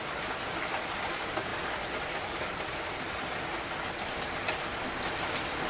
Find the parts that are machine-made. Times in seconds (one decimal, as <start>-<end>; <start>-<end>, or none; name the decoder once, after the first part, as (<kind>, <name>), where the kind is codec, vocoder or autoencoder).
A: none